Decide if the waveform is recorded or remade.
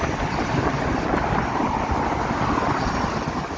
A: recorded